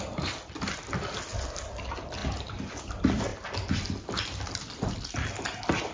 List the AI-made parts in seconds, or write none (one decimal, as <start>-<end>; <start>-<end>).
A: none